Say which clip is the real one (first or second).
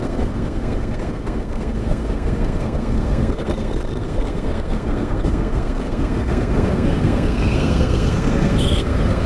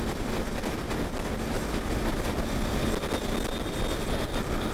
second